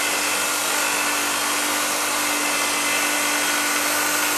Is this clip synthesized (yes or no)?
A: no